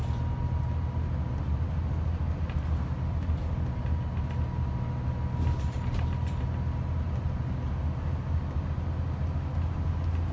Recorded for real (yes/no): yes